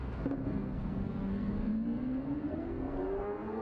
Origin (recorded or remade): remade